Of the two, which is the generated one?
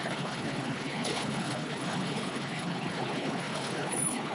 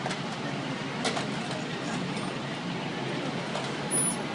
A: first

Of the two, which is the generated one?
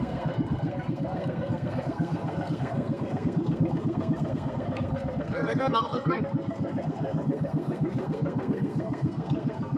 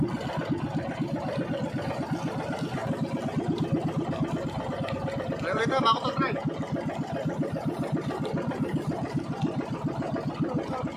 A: first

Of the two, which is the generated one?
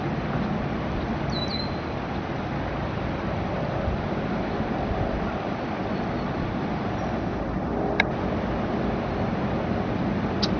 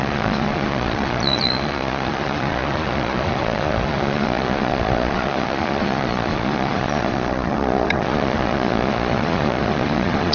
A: second